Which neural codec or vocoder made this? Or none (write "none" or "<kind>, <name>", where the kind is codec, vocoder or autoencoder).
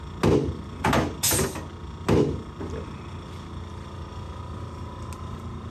none